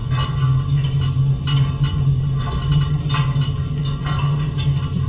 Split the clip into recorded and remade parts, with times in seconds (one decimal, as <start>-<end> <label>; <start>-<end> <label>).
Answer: 0.0-5.1 recorded